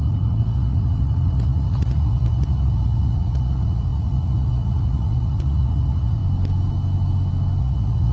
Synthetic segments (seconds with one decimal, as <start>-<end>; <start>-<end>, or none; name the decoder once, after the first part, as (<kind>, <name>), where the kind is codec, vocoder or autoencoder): 0.0-6.2 (vocoder, Vocos); 7.6-8.1